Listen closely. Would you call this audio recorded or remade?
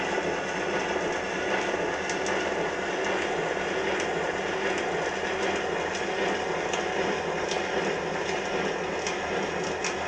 recorded